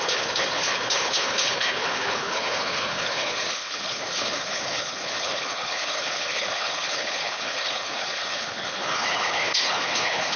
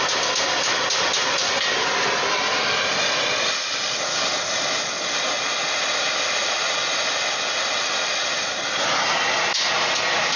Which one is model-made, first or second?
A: first